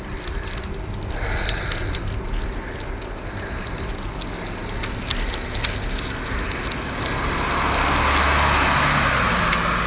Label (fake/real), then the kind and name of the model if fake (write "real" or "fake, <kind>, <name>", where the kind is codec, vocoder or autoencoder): real